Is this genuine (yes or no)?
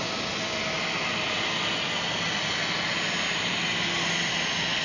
yes